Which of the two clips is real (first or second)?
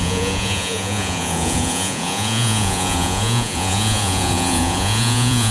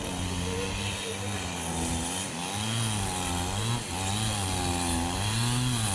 second